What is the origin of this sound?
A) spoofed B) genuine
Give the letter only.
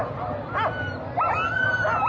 B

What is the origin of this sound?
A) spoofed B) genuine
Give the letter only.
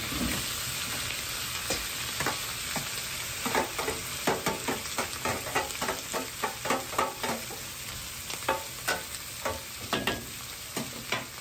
B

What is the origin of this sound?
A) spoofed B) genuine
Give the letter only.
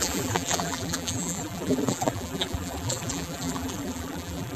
A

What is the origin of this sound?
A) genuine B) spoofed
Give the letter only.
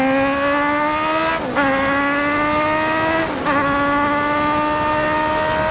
A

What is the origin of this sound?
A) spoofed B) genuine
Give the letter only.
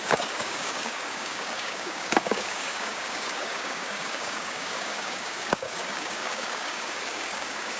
A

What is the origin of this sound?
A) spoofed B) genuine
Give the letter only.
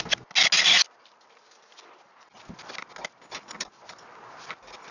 B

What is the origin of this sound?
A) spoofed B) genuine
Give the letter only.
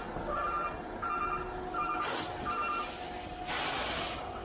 B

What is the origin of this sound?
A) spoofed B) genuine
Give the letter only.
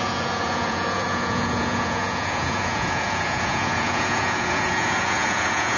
A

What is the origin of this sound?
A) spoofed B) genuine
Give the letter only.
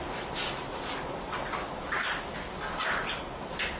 B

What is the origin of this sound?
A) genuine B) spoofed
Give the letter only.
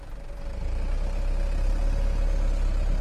A